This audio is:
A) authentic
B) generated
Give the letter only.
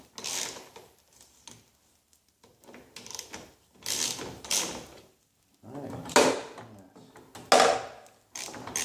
A